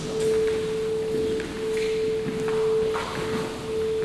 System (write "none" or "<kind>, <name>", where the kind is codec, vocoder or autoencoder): none